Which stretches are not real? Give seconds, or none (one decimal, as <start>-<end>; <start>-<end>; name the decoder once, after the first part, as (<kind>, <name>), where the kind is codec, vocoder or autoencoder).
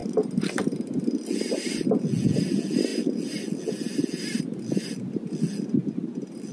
0.0-0.6 (vocoder, BigVGAN v2)